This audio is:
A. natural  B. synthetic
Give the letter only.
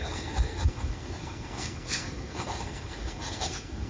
B